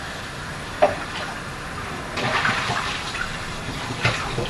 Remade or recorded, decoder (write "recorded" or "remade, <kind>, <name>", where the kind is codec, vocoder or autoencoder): remade, vocoder, BigVGAN v2